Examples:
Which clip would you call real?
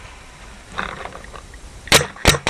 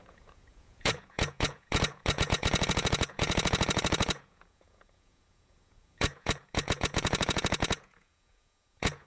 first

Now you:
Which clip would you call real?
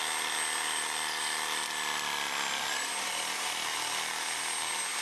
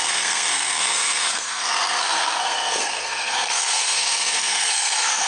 first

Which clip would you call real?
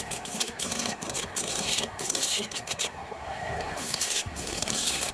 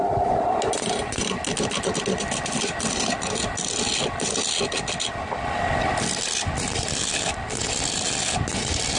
second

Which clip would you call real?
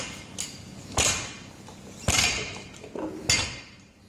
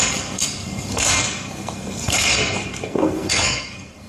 first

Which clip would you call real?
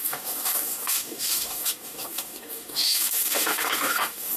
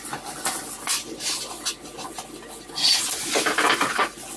second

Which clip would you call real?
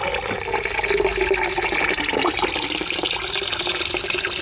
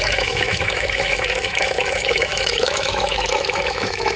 first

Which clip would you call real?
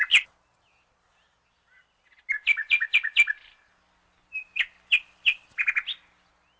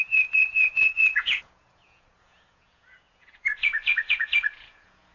first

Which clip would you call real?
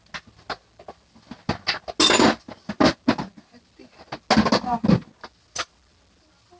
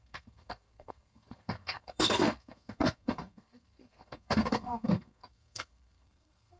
first